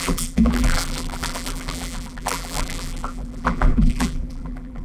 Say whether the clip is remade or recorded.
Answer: remade